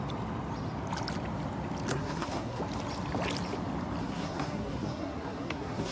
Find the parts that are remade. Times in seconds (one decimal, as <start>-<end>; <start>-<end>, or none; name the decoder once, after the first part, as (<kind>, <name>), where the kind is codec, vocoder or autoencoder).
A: 1.9-2.6 (codec, SNAC); 4.0-5.9